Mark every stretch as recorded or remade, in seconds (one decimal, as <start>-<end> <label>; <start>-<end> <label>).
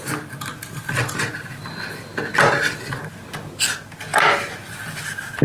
0.0-5.4 recorded